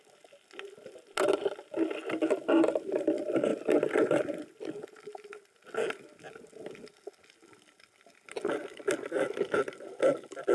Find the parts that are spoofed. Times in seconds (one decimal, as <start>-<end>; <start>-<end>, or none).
none